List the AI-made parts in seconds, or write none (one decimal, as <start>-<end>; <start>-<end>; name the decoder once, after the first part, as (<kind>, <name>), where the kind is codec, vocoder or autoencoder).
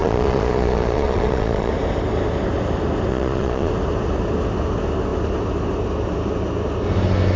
0.0-1.7 (vocoder, Vocos); 3.1-3.7